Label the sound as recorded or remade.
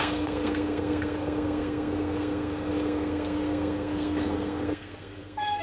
remade